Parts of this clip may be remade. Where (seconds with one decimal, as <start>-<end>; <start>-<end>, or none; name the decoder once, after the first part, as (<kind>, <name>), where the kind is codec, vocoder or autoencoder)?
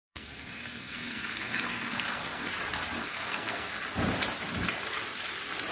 0.0-2.5 (codec, SNAC); 3.0-3.7